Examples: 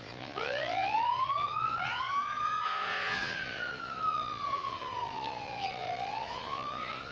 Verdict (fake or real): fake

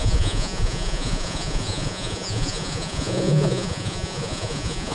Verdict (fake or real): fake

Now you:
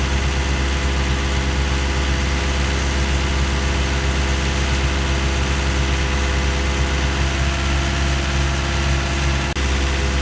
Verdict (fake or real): real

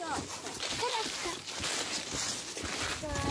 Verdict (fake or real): real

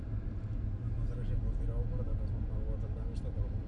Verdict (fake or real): real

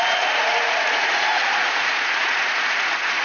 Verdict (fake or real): fake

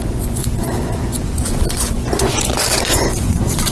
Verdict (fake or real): fake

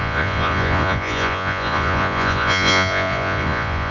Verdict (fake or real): fake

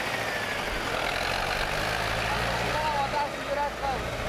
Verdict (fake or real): real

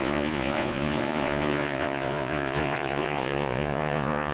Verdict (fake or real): fake